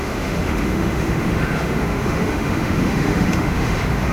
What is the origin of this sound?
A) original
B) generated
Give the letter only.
B